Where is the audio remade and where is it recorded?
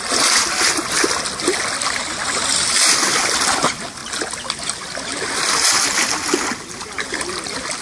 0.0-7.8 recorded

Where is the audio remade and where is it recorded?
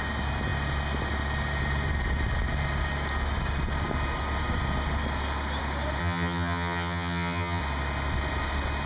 0.0-6.0 recorded; 6.0-7.6 remade; 7.6-8.9 recorded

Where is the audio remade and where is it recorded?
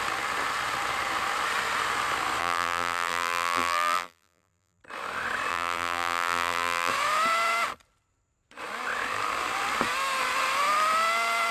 0.0-2.4 recorded; 2.4-4.8 remade; 4.8-5.5 recorded; 5.5-6.9 remade; 6.9-11.5 recorded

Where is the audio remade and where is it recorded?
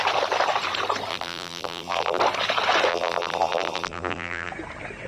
0.0-1.1 recorded; 1.1-2.2 remade; 2.2-2.9 recorded; 2.9-4.5 remade; 4.5-5.1 recorded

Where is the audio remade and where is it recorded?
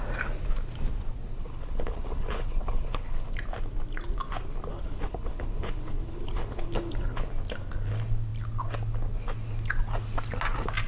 0.0-1.3 recorded; 1.3-3.3 remade; 3.3-4.7 recorded; 4.7-7.2 remade; 7.2-10.9 recorded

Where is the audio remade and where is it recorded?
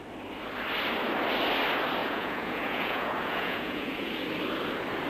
0.0-2.0 recorded; 2.0-4.1 remade; 4.1-5.1 recorded